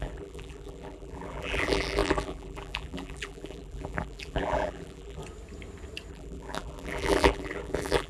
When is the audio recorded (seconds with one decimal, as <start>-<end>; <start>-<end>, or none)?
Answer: 5.2-6.1